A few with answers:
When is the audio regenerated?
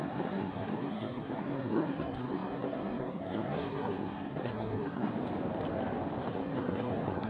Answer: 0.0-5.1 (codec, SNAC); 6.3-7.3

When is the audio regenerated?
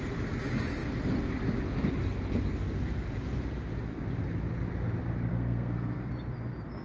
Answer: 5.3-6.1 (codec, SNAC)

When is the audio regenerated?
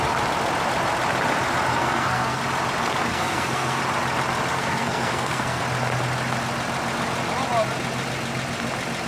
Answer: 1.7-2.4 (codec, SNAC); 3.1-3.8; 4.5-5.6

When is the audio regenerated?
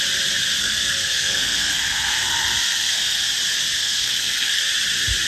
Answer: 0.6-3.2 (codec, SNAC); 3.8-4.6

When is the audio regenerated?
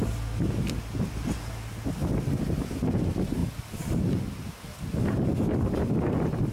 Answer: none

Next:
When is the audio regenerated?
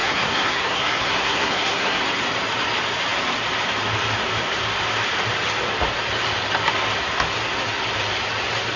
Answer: 0.0-2.0 (codec, SNAC)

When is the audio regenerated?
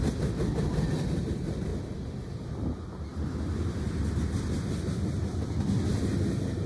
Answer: none